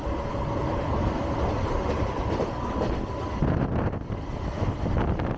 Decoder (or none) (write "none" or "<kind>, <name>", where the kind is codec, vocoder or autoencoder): none